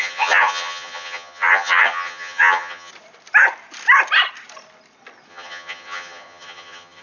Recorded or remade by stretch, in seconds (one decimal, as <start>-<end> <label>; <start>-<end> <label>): 0.0-2.9 remade; 2.9-5.3 recorded; 5.3-7.0 remade